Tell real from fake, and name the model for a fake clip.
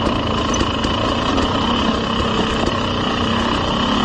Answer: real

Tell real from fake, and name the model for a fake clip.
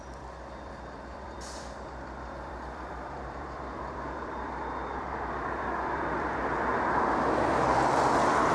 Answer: fake, vocoder, BigVGAN v2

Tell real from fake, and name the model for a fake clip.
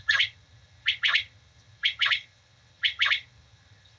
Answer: fake, vocoder, HiFi-GAN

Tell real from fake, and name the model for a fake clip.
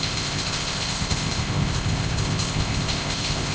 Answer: fake, codec, ZipCodec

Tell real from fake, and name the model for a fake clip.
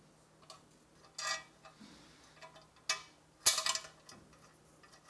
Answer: real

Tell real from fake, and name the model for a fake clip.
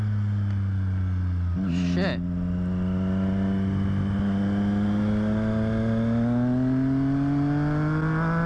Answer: real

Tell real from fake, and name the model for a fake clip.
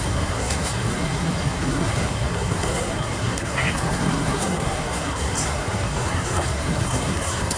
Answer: fake, codec, SNAC